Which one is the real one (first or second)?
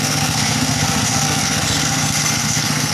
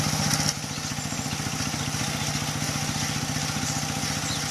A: second